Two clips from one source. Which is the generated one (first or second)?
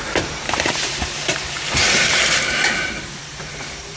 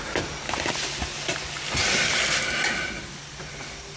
first